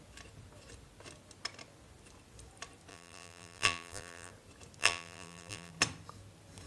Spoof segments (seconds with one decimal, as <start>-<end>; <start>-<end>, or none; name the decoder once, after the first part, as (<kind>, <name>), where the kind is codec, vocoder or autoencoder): 2.9-4.3 (vocoder, BigVGAN v2); 4.8-5.7